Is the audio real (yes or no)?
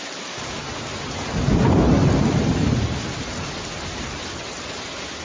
yes